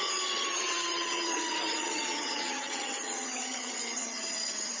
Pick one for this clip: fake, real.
fake